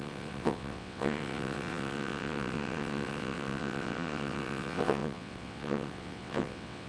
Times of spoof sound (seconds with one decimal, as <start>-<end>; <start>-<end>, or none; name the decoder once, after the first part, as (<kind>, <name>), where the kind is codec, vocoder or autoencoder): 0.0-6.9 (vocoder, WaveNeXt)